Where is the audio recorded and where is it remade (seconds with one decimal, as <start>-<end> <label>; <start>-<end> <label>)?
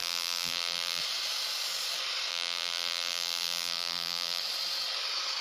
0.0-1.0 remade; 1.0-2.3 recorded; 2.3-4.4 remade; 4.4-5.4 recorded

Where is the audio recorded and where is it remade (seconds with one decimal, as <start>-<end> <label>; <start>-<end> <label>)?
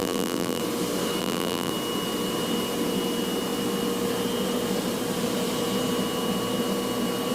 0.0-0.6 remade; 0.6-1.2 recorded; 1.2-1.7 remade; 1.7-7.3 recorded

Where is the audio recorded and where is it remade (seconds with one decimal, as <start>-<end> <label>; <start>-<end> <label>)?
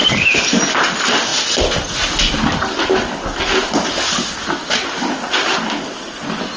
0.0-0.6 remade; 0.6-6.6 recorded